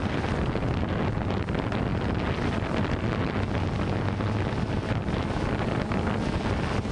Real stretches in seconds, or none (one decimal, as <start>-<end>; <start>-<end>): 0.0-6.9